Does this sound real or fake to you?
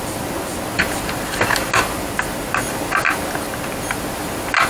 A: real